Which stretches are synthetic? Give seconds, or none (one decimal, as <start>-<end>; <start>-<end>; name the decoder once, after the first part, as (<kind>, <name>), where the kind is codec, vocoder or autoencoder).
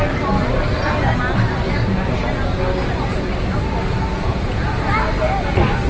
4.1-4.7 (vocoder, Vocos)